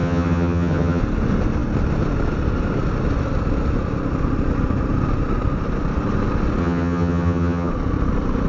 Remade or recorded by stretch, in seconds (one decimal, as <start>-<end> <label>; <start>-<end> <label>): 0.0-1.0 remade; 1.0-6.6 recorded; 6.6-7.7 remade; 7.7-8.5 recorded